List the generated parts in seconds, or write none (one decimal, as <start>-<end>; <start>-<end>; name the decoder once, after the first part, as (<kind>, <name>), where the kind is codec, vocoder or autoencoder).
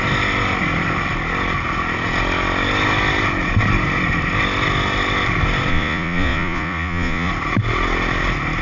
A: 5.7-7.3 (vocoder, Vocos)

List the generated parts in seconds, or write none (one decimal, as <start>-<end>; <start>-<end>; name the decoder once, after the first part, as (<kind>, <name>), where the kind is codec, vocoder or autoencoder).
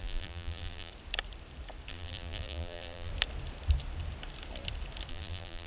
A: 0.0-0.9 (vocoder, BigVGAN v2); 1.9-3.1; 5.1-5.7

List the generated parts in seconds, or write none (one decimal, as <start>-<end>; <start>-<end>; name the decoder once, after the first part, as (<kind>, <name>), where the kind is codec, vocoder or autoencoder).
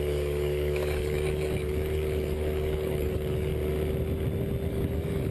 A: 0.0-3.5 (codec, DAC); 4.7-5.3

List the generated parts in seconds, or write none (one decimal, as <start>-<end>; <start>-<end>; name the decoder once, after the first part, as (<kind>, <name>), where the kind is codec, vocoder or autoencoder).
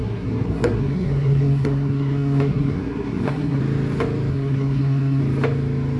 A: 0.0-3.6 (codec, SNAC); 4.3-5.2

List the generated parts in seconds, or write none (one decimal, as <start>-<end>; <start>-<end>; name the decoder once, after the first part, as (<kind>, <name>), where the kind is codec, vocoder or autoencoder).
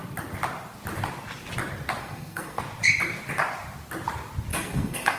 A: 2.0-2.6 (codec, SNAC); 4.5-5.2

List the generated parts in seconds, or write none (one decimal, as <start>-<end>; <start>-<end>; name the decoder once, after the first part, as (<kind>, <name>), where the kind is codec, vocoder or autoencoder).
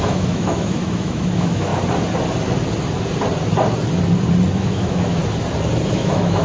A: 0.0-1.7 (autoencoder, DAC-VAE); 4.5-5.2; 5.9-6.4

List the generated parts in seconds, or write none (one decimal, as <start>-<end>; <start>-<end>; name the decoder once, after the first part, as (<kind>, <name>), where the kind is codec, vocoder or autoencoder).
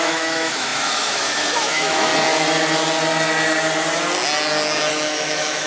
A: 0.0-2.1 (autoencoder, DAC-VAE); 4.9-5.7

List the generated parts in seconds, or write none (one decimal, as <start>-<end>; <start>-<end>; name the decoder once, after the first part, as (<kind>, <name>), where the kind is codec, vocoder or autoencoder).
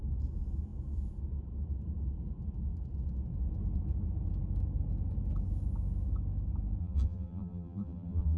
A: 6.8-8.4 (vocoder, BigVGAN v2)